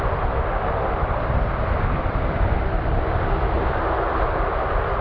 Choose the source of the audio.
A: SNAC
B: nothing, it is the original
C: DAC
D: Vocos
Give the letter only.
B